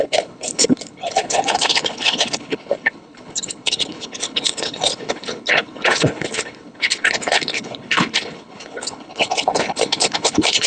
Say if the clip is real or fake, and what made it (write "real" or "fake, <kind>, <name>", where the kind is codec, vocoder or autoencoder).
fake, codec, HILCodec